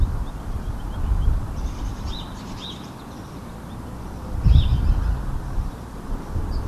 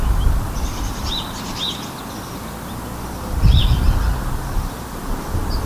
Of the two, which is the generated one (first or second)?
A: first